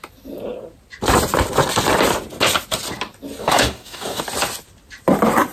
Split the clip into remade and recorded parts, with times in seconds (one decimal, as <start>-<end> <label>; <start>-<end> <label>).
0.0-3.4 recorded; 3.4-4.2 remade; 4.2-5.5 recorded

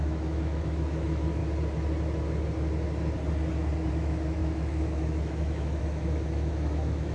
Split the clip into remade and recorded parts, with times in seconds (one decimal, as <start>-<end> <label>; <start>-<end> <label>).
0.0-1.4 remade; 1.4-3.9 recorded; 3.9-7.1 remade